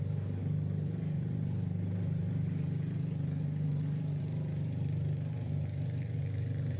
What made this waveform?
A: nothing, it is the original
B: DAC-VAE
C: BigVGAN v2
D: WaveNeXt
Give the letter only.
C